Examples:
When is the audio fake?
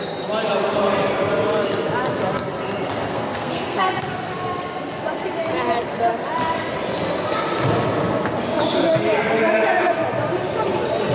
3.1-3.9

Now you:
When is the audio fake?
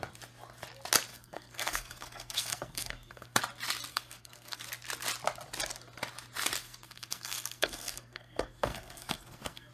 1.1-3.4; 3.9-4.6; 6.6-9.7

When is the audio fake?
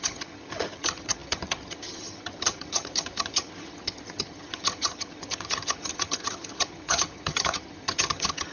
0.0-8.5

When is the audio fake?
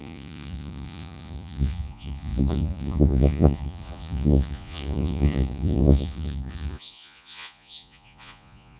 0.0-8.8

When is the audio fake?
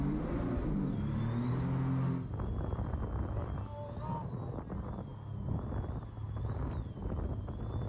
none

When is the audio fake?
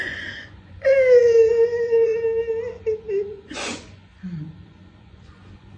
0.0-0.9; 1.5-2.1; 3.0-5.8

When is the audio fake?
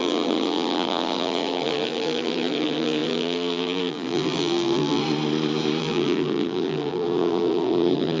0.0-5.0; 5.8-8.2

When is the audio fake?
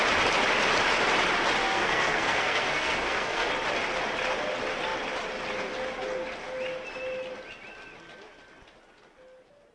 1.6-3.5